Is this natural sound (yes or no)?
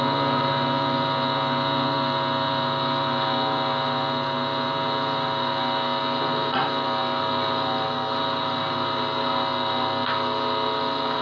yes